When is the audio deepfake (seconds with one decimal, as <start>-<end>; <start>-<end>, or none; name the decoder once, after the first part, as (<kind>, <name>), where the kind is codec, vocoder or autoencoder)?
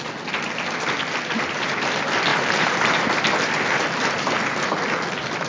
2.3-3.0 (vocoder, BigVGAN v2)